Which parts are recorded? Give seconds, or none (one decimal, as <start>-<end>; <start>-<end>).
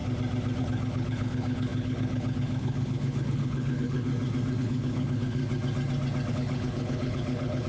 0.0-0.6; 4.1-4.6; 5.4-6.3